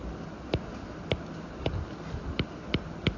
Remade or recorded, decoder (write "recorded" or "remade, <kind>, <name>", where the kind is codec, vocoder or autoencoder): recorded